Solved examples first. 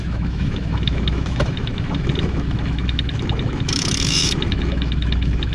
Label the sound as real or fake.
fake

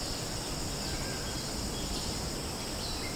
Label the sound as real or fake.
real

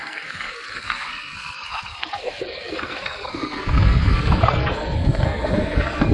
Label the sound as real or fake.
fake